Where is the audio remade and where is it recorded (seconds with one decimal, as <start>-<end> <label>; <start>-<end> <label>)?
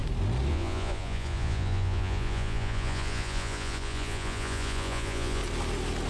0.0-0.5 recorded; 0.5-5.4 remade; 5.4-6.1 recorded